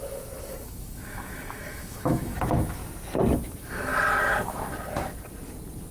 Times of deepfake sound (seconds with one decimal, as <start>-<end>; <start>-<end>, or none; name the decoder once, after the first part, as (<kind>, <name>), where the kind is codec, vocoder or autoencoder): 0.0-2.8 (autoencoder, DAC-VAE); 3.5-3.9